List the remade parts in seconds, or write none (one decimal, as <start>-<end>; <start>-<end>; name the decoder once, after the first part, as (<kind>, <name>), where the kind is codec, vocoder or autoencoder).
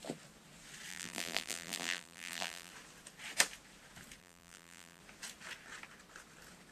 0.9-2.7 (vocoder, BigVGAN v2); 4.2-5.0